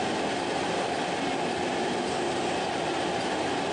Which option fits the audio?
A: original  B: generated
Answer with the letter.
A